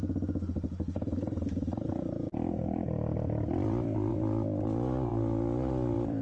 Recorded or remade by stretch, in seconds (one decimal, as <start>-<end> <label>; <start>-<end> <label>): 0.0-2.3 recorded; 2.3-4.1 remade; 4.1-5.1 recorded; 5.1-6.2 remade